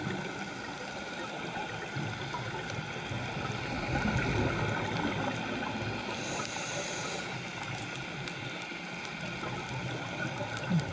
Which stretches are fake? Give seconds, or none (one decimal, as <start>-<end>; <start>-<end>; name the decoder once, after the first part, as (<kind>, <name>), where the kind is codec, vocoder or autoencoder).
none